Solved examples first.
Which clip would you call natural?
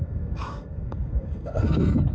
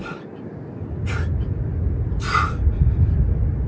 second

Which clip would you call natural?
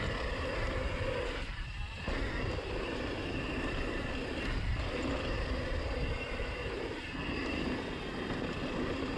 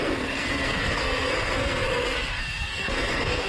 first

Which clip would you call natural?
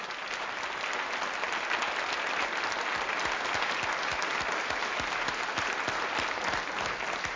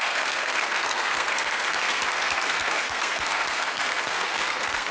first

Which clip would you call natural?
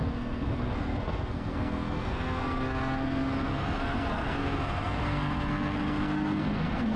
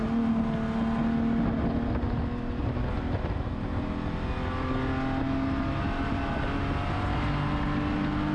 second